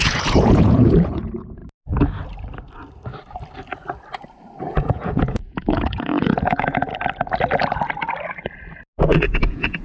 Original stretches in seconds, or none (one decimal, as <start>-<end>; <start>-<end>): 1.6-4.7; 6.9-9.0